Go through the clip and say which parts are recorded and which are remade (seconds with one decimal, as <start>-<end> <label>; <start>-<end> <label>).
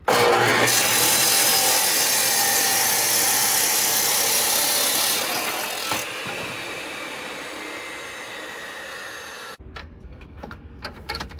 0.0-9.8 recorded; 9.8-11.4 remade